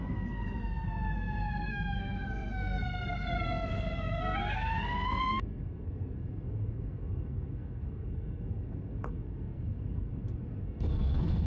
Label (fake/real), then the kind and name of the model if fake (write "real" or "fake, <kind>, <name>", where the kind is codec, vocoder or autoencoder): fake, codec, SNAC